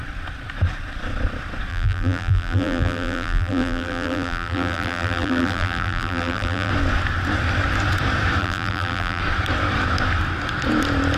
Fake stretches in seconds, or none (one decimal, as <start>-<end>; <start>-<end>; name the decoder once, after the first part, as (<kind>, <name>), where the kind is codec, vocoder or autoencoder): 1.7-6.7 (vocoder, BigVGAN v2); 8.4-9.2